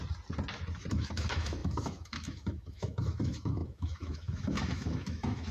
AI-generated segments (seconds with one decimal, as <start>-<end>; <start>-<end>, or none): 0.9-5.5